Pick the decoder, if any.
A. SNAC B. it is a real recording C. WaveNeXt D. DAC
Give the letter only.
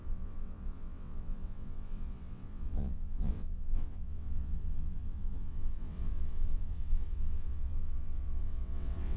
C